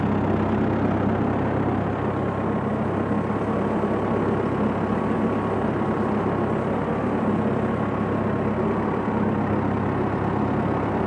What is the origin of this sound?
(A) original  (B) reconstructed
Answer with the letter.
A